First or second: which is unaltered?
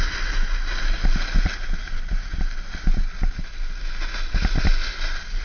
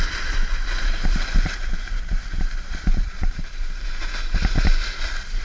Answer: first